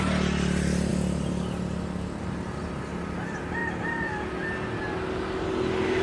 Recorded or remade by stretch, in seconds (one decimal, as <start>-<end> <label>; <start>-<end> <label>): 0.0-6.0 recorded